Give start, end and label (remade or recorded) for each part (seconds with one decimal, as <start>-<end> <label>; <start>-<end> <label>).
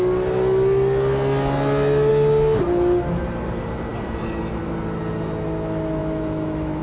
0.0-6.0 recorded; 6.0-6.8 remade